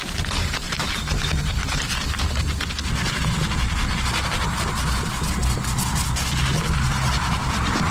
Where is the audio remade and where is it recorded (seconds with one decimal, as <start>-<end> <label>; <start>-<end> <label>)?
0.0-7.9 recorded